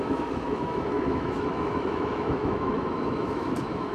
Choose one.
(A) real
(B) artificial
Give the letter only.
B